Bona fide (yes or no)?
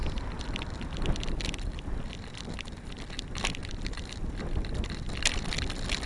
no